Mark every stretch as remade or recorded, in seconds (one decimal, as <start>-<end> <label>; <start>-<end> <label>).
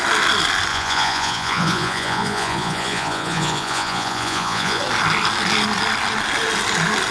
0.0-0.7 recorded; 0.7-4.8 remade; 4.8-7.1 recorded